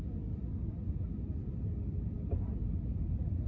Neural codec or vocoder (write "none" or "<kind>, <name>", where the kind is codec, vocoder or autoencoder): none